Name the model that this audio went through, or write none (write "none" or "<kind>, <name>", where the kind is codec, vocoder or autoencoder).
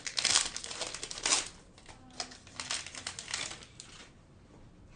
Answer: none